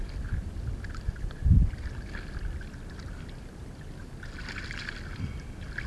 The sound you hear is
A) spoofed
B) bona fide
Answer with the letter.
B